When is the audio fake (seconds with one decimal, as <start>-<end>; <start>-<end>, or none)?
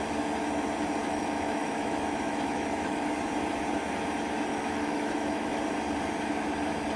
1.0-3.1; 4.5-5.6